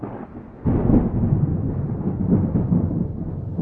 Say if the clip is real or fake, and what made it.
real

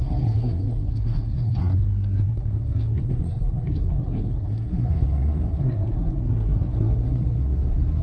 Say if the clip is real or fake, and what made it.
fake, codec, SNAC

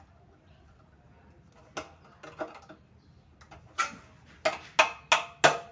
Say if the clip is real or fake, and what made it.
real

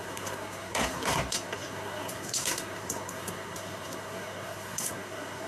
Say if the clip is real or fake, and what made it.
fake, codec, SNAC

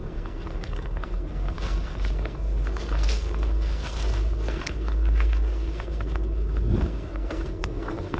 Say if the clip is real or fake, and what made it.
fake, codec, SNAC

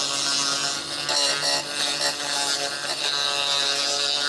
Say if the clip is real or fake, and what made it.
real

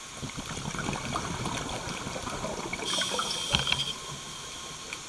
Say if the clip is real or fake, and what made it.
real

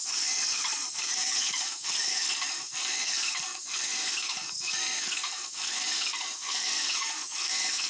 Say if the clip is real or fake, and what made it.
fake, codec, SNAC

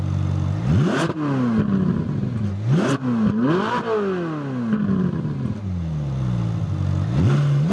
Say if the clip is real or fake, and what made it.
real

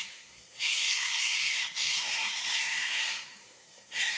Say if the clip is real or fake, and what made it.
fake, codec, SNAC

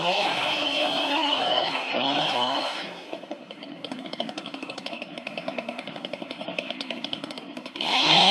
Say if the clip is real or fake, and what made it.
fake, codec, SNAC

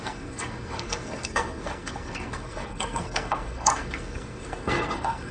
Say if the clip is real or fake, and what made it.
fake, codec, SNAC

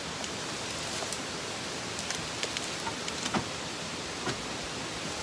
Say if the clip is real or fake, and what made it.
real